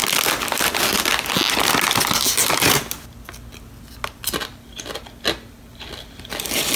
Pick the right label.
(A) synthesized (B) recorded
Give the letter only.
B